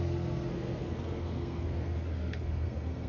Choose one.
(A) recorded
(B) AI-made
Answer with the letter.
B